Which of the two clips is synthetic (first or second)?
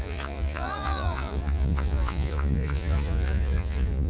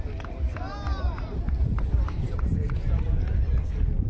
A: first